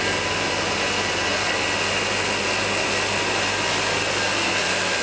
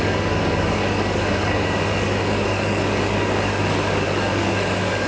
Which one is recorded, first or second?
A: first